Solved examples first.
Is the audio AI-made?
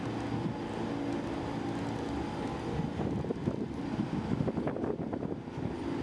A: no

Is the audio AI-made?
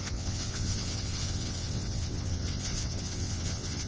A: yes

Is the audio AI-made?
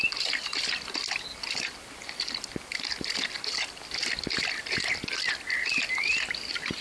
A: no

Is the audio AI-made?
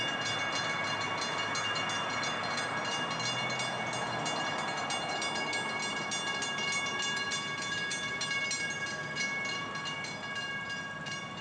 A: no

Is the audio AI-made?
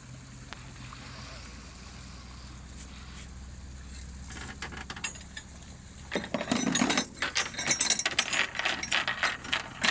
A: no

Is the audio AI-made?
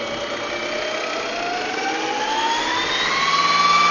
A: no